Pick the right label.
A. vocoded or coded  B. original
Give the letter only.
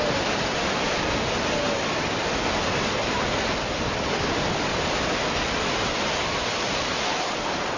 B